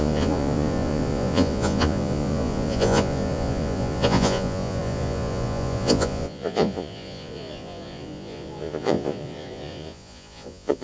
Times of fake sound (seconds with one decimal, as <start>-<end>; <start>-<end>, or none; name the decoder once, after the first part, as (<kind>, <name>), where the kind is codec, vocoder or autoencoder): 0.0-10.8 (vocoder, Vocos)